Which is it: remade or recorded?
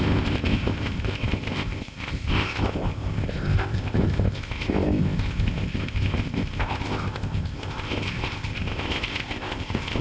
remade